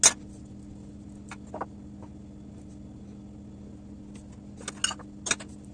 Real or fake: real